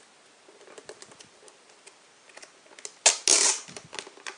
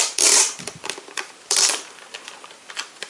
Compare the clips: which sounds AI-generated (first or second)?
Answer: second